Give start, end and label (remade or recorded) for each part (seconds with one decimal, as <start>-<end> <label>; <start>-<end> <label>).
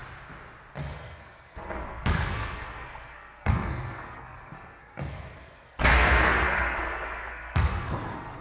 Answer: 0.0-0.8 recorded; 0.8-8.4 remade